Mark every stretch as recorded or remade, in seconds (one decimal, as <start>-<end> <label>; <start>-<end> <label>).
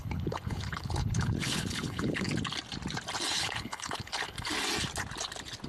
0.0-2.3 remade; 2.3-3.4 recorded; 3.4-4.5 remade; 4.5-5.7 recorded